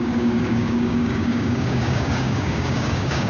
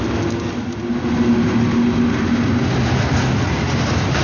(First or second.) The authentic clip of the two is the second